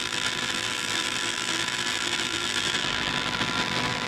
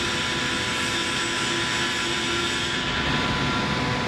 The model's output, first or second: first